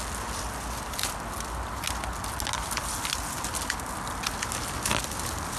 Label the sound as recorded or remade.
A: recorded